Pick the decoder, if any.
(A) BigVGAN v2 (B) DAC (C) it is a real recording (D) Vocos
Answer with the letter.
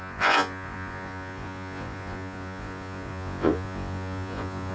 D